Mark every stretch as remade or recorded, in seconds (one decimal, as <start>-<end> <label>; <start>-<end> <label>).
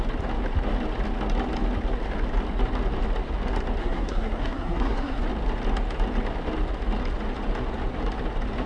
0.0-3.8 recorded; 3.8-5.2 remade; 5.2-8.7 recorded